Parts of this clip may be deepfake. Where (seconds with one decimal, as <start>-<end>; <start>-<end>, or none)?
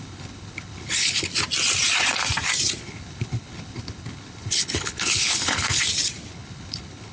0.0-1.3; 2.8-5.8; 6.3-7.1